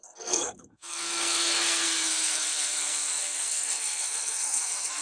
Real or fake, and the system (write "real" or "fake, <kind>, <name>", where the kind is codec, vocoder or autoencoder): fake, codec, SNAC